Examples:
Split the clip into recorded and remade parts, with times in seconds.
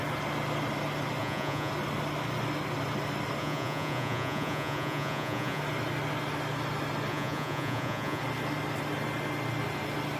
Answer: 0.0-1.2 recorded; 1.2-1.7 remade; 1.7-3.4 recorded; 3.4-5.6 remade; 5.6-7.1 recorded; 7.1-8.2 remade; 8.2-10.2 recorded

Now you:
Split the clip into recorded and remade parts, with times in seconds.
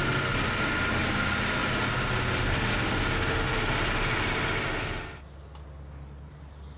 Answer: 0.0-6.8 recorded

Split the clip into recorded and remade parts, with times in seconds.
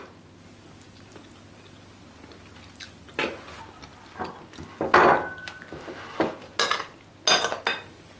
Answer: 0.0-8.2 recorded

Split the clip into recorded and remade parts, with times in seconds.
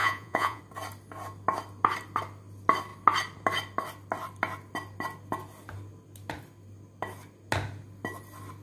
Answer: 0.0-0.6 remade; 0.6-8.6 recorded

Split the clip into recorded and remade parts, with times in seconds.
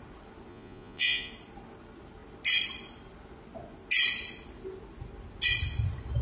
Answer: 0.0-0.5 recorded; 0.5-1.3 remade; 1.3-6.2 recorded